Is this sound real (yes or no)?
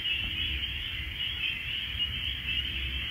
yes